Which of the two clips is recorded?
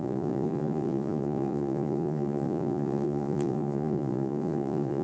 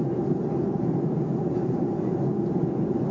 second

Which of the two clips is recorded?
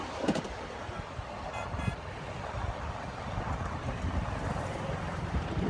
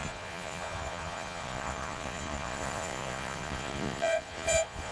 first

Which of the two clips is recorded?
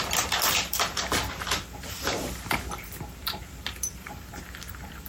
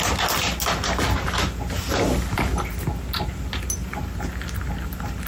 second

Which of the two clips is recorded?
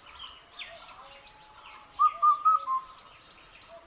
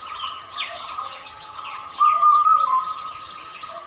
first